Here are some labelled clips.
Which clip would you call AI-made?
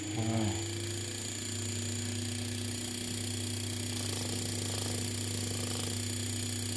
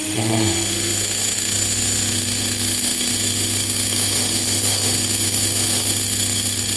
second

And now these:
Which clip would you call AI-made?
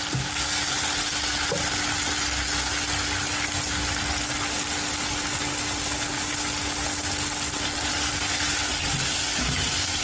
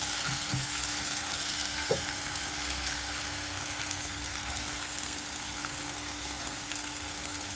second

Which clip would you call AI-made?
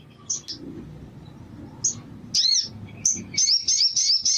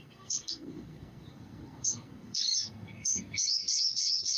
second